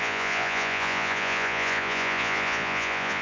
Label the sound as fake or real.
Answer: fake